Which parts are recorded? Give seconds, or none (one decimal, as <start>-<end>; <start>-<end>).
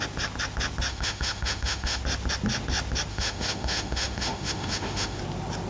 0.0-0.9; 2.0-3.1; 5.2-5.7